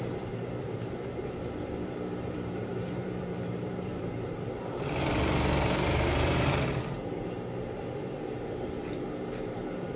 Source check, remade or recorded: remade